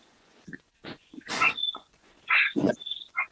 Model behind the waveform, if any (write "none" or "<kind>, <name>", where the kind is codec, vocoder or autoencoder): vocoder, Vocos